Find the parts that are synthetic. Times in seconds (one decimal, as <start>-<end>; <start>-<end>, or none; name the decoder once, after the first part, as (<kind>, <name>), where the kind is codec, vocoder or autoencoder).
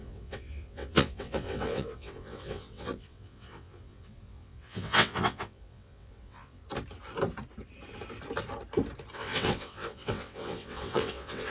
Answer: 0.0-6.6 (vocoder, WaveNeXt); 9.1-11.5